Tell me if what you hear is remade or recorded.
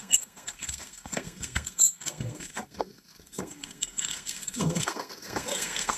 remade